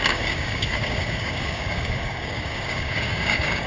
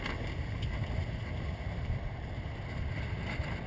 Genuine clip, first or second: second